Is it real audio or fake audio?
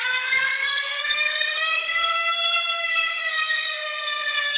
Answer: fake